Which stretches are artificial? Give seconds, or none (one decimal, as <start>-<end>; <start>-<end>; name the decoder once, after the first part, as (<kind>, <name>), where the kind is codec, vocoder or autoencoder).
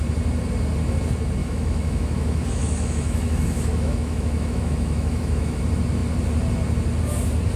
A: 1.4-5.6 (autoencoder, DAC-VAE)